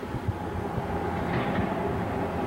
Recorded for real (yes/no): yes